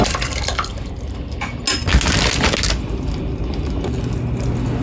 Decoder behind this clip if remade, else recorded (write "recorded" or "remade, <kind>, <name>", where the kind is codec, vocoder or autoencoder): recorded